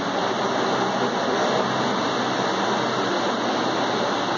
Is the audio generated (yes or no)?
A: no